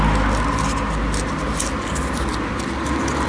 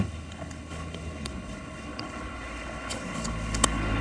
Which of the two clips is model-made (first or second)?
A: second